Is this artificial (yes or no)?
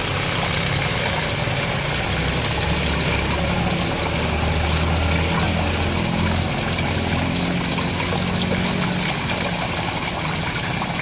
no